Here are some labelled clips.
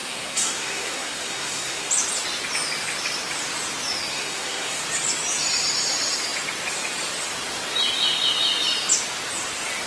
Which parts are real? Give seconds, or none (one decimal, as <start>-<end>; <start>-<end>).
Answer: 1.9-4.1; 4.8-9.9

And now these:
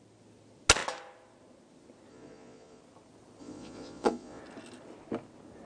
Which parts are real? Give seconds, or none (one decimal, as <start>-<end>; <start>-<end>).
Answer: 0.0-2.1; 2.8-3.4; 4.4-5.7

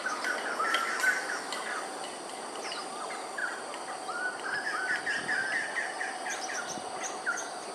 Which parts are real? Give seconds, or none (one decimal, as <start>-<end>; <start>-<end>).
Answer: 0.0-7.7

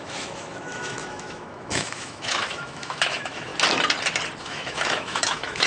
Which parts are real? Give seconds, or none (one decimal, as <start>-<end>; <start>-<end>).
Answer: 3.5-4.4

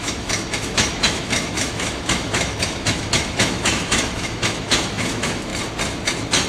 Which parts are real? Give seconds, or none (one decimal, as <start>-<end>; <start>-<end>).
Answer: 5.5-6.5

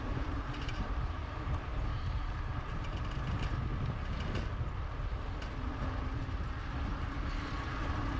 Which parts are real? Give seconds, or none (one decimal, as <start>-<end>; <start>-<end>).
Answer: 3.7-6.9